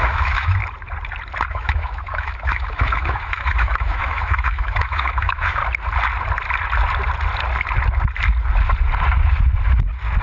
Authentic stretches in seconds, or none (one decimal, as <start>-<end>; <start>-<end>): 0.6-1.5; 5.6-10.2